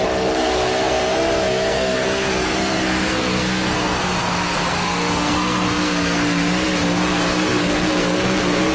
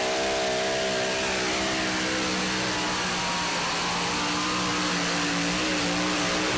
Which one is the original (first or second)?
second